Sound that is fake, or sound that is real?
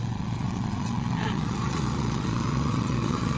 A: fake